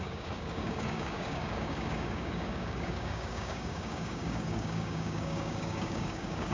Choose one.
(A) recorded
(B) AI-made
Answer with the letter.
B